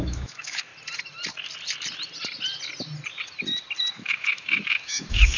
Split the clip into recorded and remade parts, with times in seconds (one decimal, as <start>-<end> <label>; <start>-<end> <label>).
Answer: 0.0-0.7 remade; 0.7-3.9 recorded; 3.9-5.4 remade

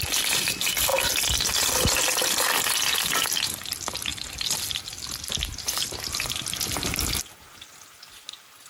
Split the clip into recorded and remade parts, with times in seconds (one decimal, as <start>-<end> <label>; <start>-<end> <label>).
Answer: 0.0-8.7 recorded

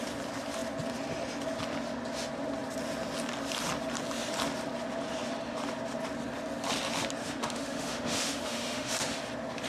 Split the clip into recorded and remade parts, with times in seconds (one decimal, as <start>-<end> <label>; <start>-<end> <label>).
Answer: 0.0-7.2 recorded; 7.2-8.9 remade; 8.9-9.7 recorded

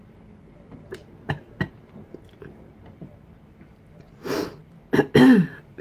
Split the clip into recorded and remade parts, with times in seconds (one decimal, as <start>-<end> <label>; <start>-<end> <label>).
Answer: 0.0-5.8 recorded

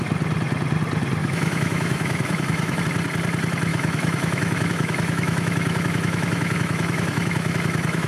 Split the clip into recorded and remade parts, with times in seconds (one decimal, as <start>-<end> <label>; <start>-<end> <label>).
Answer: 0.0-1.2 recorded; 1.2-2.8 remade; 2.8-3.7 recorded; 3.7-8.1 remade

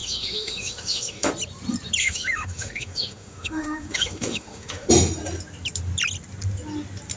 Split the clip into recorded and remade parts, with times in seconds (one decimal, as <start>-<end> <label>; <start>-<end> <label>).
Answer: 0.0-1.3 remade; 1.3-2.0 recorded; 2.0-4.9 remade; 4.9-7.2 recorded